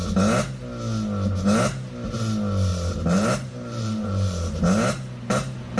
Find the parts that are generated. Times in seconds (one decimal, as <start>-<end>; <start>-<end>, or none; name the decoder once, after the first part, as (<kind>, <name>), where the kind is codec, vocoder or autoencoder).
2.7-4.6 (vocoder, BigVGAN v2)